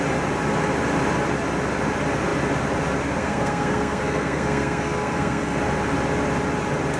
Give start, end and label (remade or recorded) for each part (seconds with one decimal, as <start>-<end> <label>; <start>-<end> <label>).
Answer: 0.0-3.2 recorded; 3.2-5.6 remade; 5.6-7.0 recorded